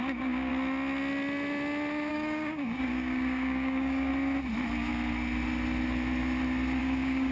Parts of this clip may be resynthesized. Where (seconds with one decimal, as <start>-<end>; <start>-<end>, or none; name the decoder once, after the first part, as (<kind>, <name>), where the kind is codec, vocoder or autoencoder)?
0.0-0.5 (codec, DAC); 2.1-4.1; 6.8-7.3